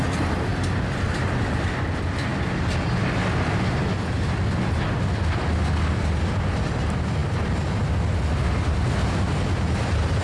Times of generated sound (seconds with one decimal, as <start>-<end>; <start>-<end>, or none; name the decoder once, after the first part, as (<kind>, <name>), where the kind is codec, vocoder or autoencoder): none